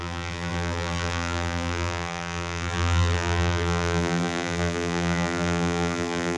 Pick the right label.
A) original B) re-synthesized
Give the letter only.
B